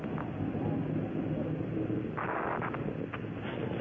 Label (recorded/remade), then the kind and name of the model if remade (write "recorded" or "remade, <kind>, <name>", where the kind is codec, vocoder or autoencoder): recorded